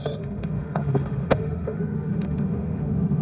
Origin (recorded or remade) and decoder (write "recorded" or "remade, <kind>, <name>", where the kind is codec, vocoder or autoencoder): remade, autoencoder, DAC-VAE